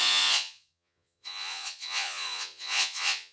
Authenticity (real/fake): fake